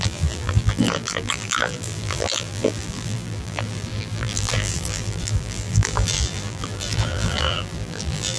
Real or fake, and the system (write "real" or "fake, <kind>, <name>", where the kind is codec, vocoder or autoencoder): fake, vocoder, BigVGAN v2